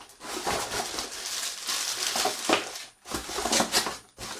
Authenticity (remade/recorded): recorded